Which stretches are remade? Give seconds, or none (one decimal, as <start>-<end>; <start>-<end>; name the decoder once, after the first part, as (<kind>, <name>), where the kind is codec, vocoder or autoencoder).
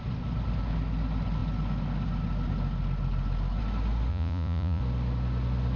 4.1-4.8 (vocoder, Vocos)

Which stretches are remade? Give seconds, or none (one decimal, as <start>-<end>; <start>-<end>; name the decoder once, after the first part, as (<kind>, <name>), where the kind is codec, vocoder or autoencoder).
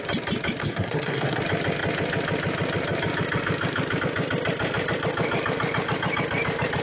0.6-1.4 (codec, SNAC)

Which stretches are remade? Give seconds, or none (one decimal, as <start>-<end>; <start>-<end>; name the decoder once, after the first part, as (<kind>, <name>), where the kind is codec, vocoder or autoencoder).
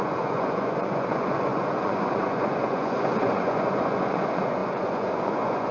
0.0-5.7 (vocoder, Vocos)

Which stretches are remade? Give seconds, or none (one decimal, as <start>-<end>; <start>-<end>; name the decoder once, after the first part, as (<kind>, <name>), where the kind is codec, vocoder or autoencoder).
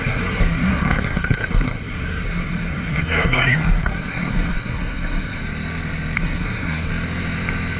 0.0-5.4 (codec, SNAC); 6.2-6.9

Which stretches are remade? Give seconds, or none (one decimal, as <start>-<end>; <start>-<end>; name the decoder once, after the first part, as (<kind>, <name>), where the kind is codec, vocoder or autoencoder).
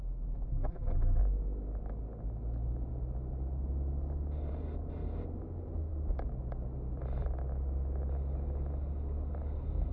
0.5-1.2 (vocoder, BigVGAN v2)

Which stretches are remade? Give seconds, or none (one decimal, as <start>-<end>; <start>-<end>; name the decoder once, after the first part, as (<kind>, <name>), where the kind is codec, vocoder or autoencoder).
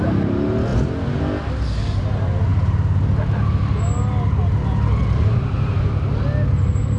none